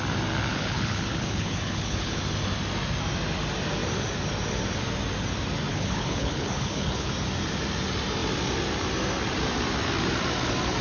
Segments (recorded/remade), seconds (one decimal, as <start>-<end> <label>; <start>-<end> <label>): 0.0-0.5 recorded; 0.5-2.2 remade; 2.2-5.7 recorded; 5.7-7.1 remade; 7.1-10.8 recorded